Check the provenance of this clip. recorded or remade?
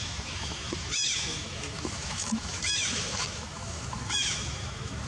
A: remade